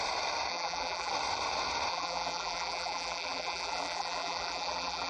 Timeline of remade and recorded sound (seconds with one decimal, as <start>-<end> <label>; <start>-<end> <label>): 0.0-0.5 recorded; 0.5-1.1 remade; 1.1-1.9 recorded; 1.9-5.1 remade